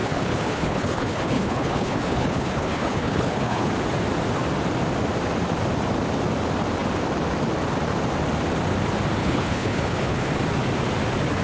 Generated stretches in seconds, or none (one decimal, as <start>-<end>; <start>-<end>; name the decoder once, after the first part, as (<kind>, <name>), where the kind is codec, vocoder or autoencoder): 0.0-3.7 (codec, HILCodec); 9.2-10.3